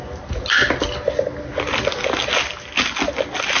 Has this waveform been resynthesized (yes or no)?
no